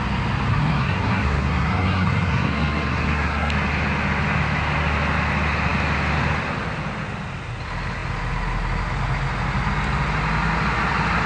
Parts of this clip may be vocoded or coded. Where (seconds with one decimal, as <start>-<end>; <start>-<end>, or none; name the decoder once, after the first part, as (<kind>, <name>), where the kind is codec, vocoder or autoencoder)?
0.5-3.5 (codec, SNAC)